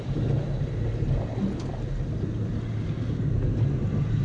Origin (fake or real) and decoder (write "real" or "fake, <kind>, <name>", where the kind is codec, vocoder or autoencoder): real